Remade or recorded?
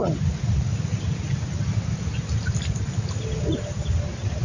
recorded